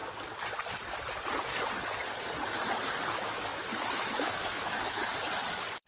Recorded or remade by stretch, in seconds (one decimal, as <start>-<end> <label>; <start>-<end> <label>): 0.0-3.1 recorded; 3.1-5.0 remade; 5.0-5.9 recorded